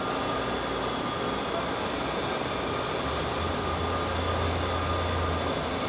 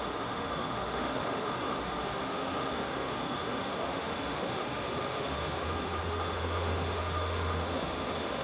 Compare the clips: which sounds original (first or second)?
first